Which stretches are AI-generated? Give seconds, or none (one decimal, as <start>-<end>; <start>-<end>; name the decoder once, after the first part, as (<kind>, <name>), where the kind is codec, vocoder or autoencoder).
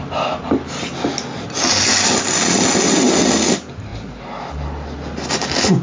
none